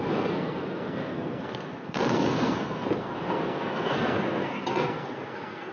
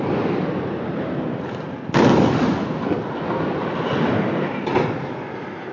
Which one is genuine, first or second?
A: second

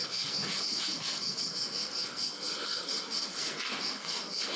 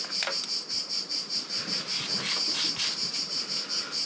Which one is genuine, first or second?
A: second